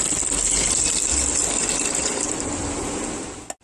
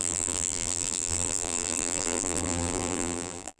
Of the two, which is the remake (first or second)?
second